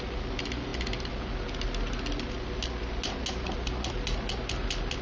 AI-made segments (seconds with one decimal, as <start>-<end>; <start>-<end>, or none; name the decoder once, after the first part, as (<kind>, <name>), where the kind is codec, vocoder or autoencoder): none

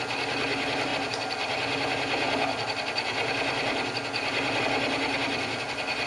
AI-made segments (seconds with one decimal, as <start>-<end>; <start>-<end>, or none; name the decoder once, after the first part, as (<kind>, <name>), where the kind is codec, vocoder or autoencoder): none

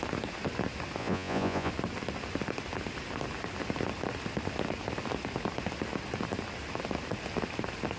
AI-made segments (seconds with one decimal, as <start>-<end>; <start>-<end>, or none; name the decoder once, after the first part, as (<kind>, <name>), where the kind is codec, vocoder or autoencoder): 1.0-1.7 (vocoder, Vocos)

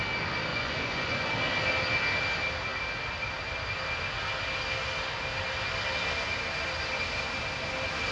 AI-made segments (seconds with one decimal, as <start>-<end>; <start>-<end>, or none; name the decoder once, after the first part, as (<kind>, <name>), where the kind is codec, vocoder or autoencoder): 0.5-1.3 (vocoder, Vocos)

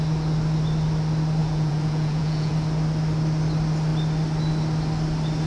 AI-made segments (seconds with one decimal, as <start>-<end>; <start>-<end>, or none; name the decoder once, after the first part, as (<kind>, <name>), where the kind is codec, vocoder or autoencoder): 1.4-2.5 (vocoder, Vocos)